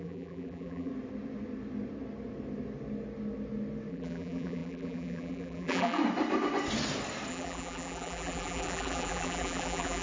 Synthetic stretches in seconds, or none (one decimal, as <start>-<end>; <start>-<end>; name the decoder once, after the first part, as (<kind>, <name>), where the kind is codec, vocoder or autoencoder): 0.0-0.9 (vocoder, BigVGAN v2); 3.9-6.0; 7.3-10.0